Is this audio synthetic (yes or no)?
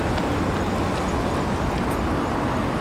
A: no